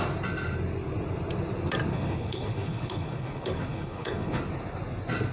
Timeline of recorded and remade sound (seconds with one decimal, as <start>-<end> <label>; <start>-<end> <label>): 0.0-1.9 recorded; 1.9-4.4 remade; 4.4-5.3 recorded